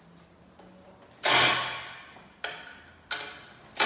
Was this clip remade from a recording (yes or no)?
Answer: no